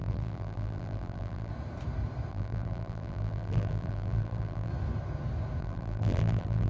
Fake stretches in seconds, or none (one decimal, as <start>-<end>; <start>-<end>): 0.0-1.5; 2.3-4.7; 5.6-6.7